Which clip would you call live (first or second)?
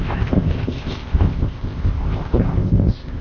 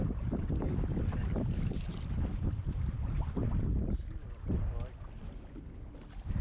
second